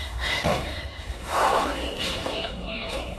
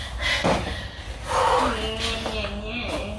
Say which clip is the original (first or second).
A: second